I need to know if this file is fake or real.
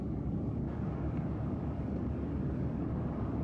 fake